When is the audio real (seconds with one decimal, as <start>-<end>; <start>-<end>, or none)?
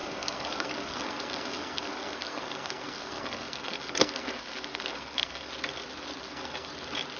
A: 5.5-6.2; 6.7-7.2